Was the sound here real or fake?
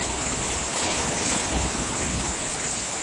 fake